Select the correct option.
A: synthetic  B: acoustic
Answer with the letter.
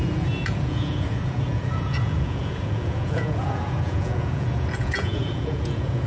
A